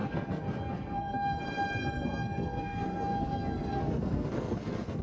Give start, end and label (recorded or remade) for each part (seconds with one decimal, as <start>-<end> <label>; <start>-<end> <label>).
0.0-1.4 remade; 1.4-1.8 recorded; 1.8-5.0 remade